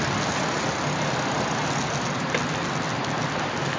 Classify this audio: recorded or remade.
recorded